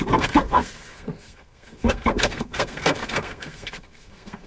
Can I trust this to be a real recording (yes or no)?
no